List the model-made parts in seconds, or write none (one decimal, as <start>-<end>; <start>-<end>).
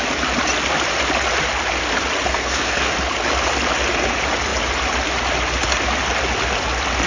2.3-2.9